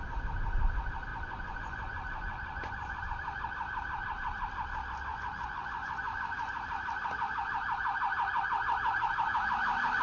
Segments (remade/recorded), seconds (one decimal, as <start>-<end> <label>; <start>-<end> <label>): 0.0-1.1 recorded; 1.1-3.0 remade; 3.0-5.1 recorded; 5.1-6.6 remade; 6.6-10.0 recorded